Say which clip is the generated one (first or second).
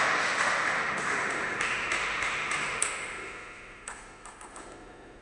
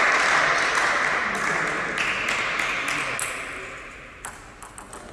first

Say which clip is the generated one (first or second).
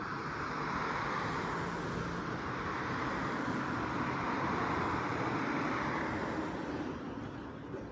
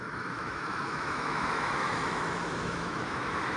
second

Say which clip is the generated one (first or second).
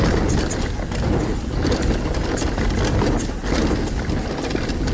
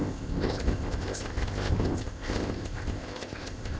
second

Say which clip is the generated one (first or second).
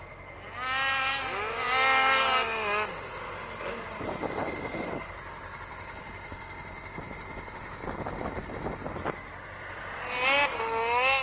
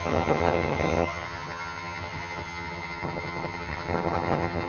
second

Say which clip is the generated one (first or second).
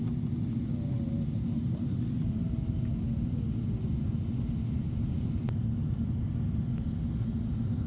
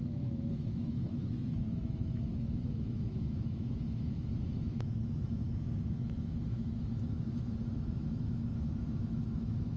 second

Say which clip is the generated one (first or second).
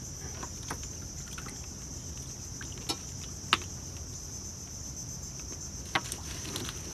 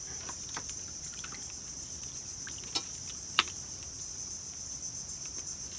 second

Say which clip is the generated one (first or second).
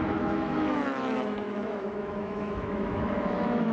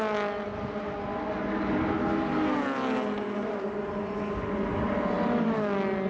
first